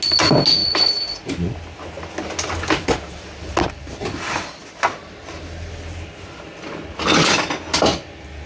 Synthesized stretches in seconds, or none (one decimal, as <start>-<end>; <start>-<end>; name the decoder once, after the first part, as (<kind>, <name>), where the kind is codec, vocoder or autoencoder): none